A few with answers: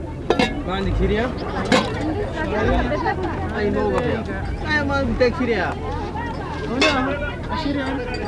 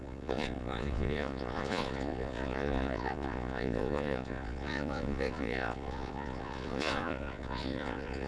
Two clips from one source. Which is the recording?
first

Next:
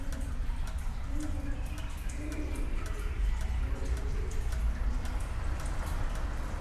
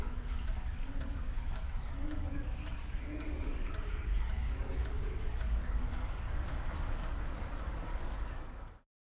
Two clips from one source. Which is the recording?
first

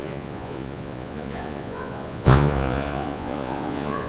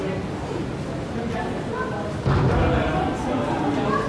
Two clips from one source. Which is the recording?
second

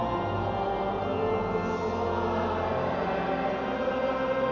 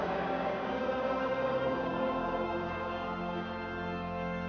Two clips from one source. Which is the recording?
first